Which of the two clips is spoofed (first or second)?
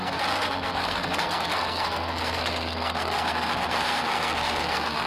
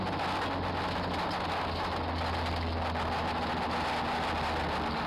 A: first